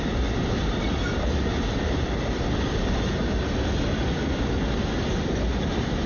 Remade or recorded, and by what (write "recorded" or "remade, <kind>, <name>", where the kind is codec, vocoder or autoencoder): recorded